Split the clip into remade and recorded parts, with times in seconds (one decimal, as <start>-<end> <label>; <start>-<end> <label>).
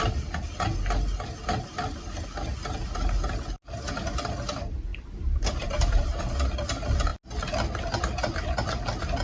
0.0-4.9 recorded; 4.9-6.2 remade; 6.2-9.2 recorded